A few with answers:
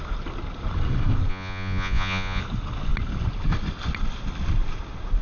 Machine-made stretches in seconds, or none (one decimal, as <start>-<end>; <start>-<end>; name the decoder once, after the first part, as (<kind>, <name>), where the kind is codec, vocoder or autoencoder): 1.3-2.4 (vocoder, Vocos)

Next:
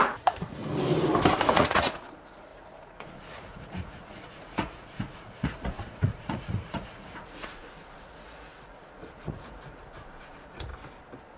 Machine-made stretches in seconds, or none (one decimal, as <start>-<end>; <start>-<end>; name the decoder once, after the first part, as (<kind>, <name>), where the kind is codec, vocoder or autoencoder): 0.0-0.6 (vocoder, Vocos); 1.5-10.7

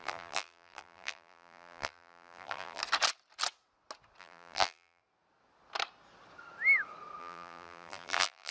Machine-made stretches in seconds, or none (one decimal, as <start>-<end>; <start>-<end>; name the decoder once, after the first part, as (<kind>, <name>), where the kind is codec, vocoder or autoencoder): 0.0-2.8 (vocoder, BigVGAN v2); 4.2-5.0; 7.2-8.5

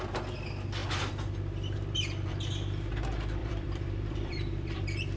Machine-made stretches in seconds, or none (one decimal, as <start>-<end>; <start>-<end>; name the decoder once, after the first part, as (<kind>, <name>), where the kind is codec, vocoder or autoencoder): 0.8-3.0 (vocoder, BigVGAN v2); 3.4-5.2